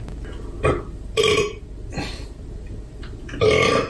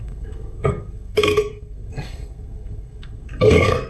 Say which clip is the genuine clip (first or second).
first